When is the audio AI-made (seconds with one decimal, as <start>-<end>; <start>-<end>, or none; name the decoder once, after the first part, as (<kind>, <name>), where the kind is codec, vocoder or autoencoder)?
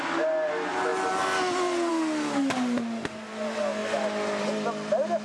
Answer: none